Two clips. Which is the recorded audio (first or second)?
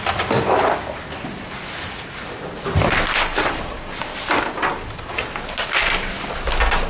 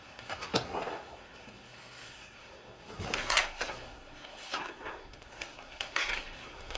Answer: first